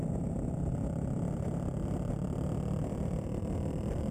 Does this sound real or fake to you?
fake